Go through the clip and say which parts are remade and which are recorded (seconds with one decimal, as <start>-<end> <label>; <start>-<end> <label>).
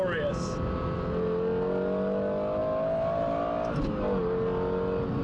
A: 0.0-5.2 recorded